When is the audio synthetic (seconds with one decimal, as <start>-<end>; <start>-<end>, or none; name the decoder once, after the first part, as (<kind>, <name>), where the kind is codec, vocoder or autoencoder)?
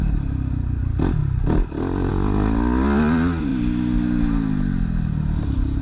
none